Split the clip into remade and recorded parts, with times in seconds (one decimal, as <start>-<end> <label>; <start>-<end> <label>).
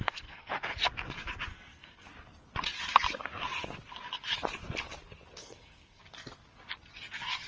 0.0-0.5 remade; 0.5-1.5 recorded; 1.5-2.1 remade; 2.1-5.4 recorded; 5.4-6.0 remade; 6.0-7.5 recorded